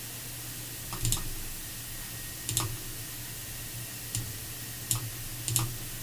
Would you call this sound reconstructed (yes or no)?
no